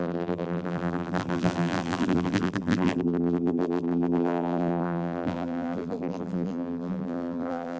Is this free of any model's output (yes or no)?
no